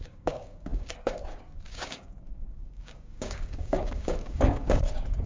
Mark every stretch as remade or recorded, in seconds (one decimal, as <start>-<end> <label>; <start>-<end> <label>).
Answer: 0.0-5.3 remade